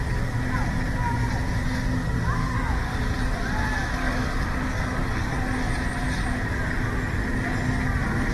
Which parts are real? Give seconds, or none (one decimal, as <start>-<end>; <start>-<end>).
0.0-2.4; 3.0-4.0; 5.4-8.3